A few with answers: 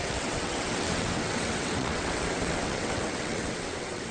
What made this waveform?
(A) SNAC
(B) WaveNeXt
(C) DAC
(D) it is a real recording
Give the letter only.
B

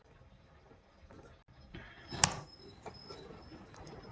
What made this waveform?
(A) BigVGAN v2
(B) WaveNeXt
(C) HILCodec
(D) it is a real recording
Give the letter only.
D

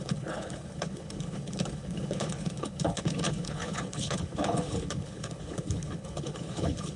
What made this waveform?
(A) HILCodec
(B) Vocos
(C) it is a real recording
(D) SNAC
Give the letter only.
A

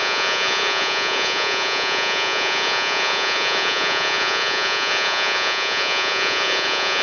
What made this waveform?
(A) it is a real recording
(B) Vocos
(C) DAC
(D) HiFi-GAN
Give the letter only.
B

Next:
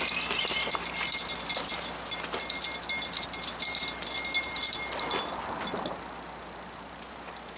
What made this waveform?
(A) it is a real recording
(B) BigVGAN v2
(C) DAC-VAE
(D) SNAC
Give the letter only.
A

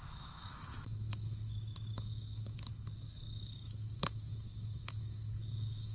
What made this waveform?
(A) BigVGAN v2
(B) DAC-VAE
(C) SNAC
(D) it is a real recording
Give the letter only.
B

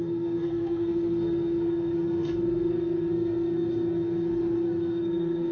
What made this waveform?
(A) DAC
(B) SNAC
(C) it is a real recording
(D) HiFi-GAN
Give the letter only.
B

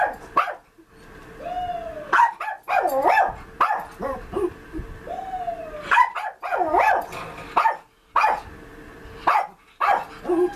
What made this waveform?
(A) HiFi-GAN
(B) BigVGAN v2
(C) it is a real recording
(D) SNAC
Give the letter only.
C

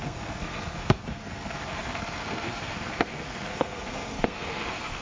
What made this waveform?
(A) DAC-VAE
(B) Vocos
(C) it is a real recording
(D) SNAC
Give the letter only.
D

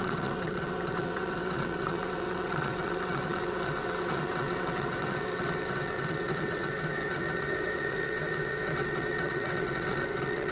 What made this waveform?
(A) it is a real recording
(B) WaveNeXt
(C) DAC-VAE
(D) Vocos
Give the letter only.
B